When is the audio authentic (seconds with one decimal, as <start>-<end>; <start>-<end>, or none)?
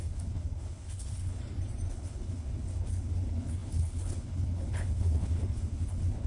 1.4-1.9